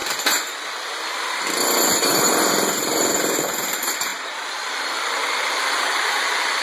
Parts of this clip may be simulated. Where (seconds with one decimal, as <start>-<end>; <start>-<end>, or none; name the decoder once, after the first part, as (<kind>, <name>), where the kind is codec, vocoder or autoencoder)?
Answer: 2.5-6.6 (vocoder, BigVGAN v2)